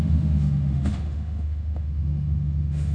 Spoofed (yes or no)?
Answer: yes